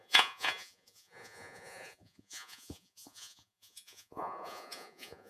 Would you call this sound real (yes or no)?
no